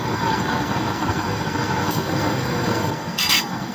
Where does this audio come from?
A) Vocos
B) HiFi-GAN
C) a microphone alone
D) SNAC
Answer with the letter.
D